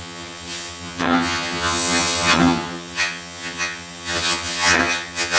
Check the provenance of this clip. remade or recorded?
remade